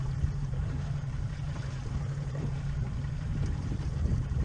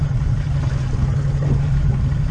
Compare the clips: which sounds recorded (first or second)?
second